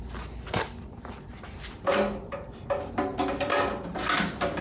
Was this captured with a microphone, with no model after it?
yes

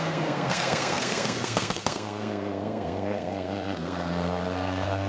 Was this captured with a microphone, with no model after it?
no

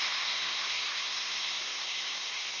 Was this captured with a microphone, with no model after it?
no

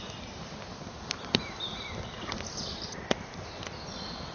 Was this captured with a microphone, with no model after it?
yes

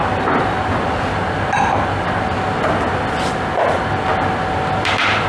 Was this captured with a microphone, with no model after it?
yes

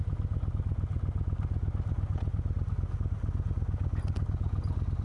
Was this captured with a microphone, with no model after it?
yes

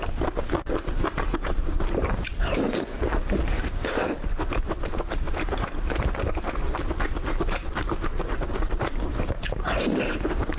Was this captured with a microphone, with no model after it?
no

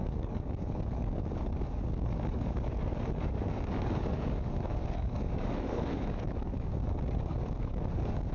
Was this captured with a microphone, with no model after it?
no